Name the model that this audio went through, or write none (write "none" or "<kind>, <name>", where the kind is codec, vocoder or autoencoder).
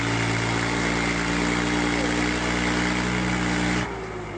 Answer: none